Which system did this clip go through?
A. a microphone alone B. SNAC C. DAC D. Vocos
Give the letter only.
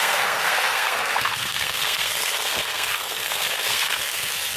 B